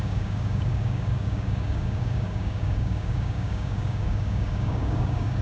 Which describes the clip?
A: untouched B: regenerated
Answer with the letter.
B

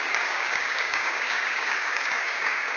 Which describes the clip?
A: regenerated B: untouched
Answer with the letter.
A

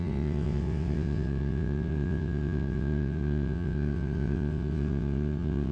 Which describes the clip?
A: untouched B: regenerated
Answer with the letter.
B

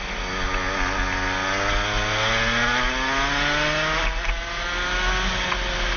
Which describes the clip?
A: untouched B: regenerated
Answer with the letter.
A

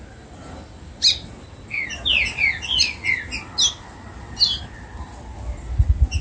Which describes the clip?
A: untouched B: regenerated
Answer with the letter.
A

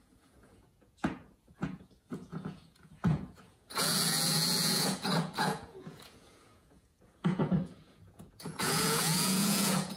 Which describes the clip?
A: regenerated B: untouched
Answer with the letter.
A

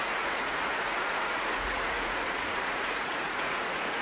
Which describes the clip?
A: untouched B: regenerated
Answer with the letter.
B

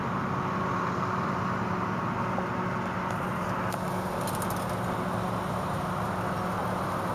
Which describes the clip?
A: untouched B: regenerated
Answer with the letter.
A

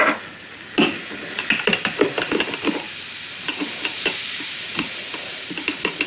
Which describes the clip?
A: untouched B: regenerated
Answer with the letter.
A